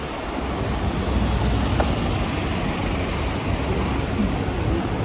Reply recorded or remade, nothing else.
recorded